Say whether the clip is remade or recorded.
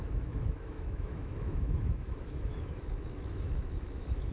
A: remade